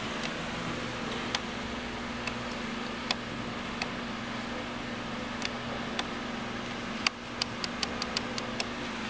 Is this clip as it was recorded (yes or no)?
yes